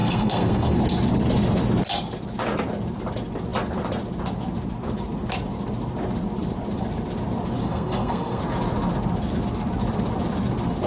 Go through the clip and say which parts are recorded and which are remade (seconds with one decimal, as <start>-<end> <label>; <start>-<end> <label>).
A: 0.0-0.8 remade; 0.8-7.6 recorded; 7.6-8.4 remade; 8.4-10.9 recorded